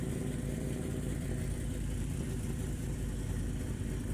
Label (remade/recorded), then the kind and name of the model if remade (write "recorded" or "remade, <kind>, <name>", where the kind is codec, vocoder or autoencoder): remade, vocoder, BigVGAN v2